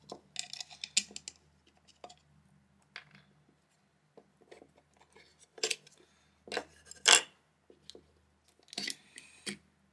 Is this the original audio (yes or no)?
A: yes